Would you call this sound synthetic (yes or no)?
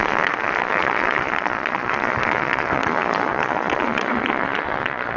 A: yes